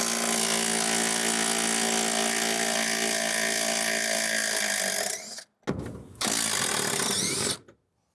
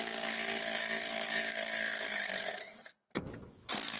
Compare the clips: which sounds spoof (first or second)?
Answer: second